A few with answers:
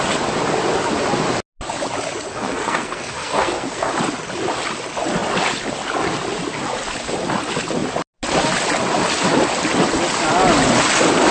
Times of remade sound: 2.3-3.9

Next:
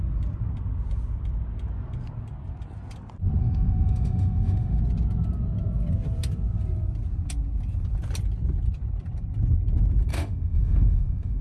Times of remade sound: 3.4-4.8; 10.1-11.4

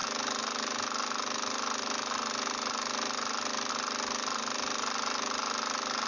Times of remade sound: none

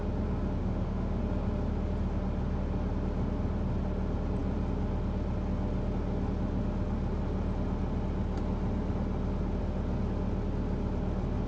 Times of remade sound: 0.6-1.2

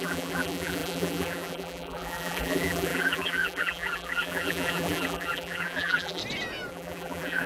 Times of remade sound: 0.0-6.2; 6.7-7.5

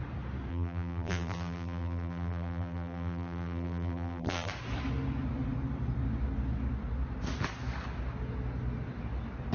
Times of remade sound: 0.5-4.5

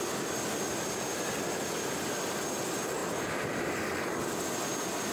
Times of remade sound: none